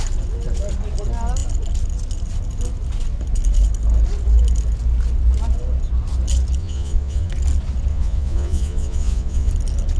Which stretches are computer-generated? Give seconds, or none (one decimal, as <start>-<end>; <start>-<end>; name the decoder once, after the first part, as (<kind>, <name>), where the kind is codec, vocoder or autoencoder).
6.6-7.3 (vocoder, Vocos); 7.9-9.5